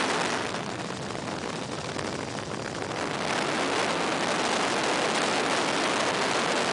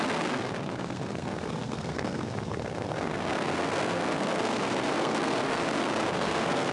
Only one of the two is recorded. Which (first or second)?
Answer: first